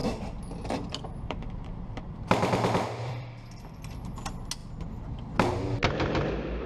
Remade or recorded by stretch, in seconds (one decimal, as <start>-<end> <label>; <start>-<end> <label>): 0.0-3.8 remade; 3.8-6.7 recorded